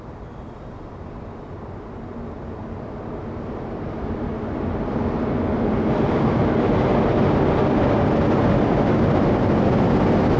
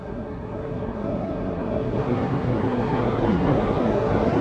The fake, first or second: second